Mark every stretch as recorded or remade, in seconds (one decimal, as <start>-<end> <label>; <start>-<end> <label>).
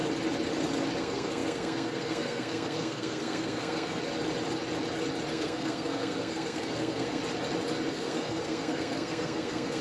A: 0.0-1.0 recorded; 1.0-4.0 remade; 4.0-5.3 recorded; 5.3-7.2 remade; 7.2-7.9 recorded; 7.9-9.8 remade